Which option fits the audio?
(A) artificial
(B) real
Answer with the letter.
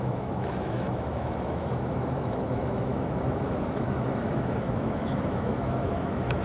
A